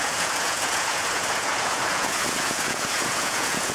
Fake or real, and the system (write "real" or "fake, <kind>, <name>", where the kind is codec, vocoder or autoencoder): fake, vocoder, Vocos